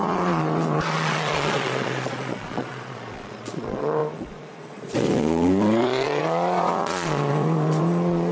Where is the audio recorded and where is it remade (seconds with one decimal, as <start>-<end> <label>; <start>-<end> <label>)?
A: 0.0-8.3 remade